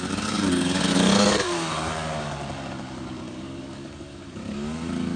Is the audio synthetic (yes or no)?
yes